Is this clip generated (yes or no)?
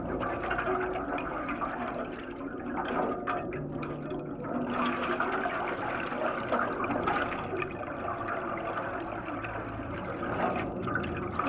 no